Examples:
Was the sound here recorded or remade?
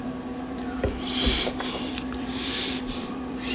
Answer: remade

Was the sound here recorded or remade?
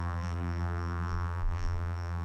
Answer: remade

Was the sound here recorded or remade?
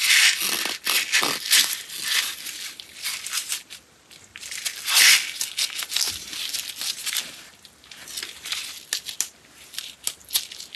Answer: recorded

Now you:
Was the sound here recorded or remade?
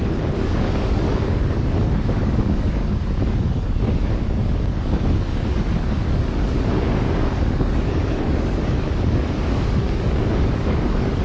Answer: remade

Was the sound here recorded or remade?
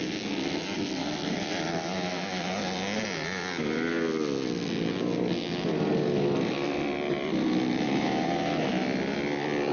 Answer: recorded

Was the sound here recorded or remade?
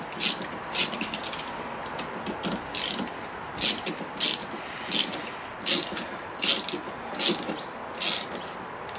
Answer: recorded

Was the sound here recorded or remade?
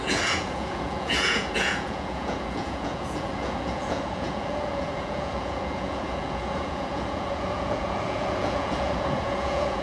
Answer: remade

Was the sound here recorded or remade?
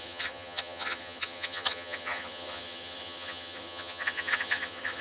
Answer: remade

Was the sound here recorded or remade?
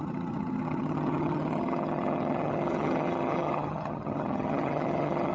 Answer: remade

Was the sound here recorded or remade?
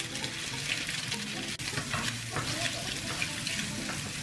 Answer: recorded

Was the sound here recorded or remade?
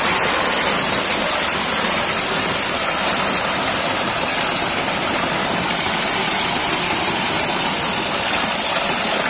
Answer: remade